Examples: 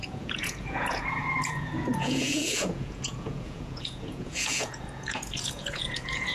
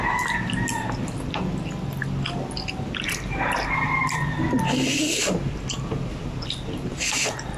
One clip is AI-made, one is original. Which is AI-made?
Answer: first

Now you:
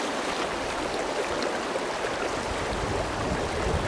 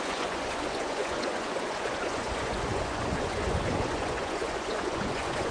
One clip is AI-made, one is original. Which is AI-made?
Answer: second